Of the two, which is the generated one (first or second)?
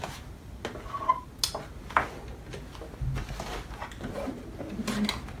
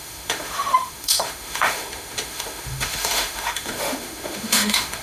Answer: second